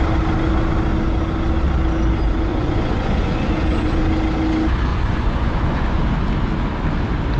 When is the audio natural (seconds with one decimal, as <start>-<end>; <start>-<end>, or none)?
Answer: 0.0-2.5; 4.0-4.9; 6.0-7.4